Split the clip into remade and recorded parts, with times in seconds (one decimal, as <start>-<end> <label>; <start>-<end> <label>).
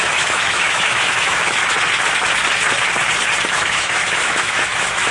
0.0-1.6 remade; 1.6-3.5 recorded; 3.5-5.1 remade